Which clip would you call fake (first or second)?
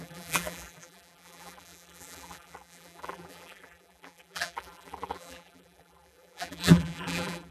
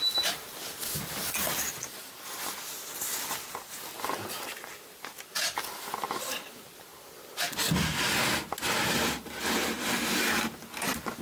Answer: first